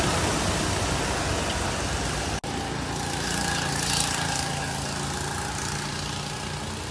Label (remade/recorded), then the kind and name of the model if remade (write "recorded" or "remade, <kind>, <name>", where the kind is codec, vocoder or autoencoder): recorded